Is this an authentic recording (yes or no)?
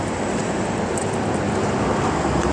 yes